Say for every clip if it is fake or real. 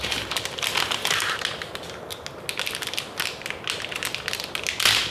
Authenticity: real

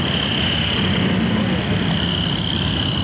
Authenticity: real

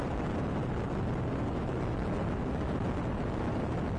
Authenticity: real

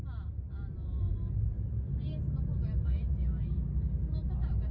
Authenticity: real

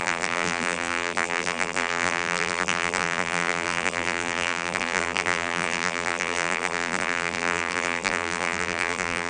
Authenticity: fake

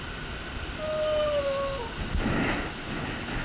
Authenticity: real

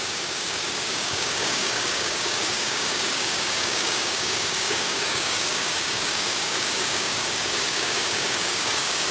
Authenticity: fake